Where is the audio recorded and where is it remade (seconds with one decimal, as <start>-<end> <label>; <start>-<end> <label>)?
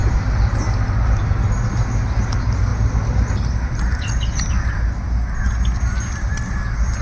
0.0-7.0 recorded